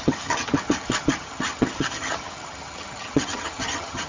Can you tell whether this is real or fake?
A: fake